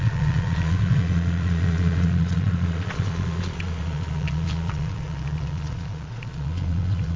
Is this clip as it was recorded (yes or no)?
no